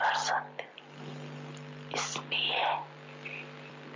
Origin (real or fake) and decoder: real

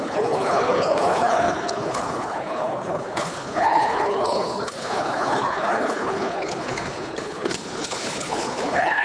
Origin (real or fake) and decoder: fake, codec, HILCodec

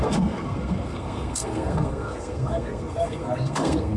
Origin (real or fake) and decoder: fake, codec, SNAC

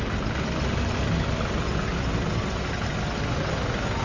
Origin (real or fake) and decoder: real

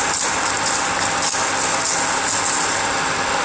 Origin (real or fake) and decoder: real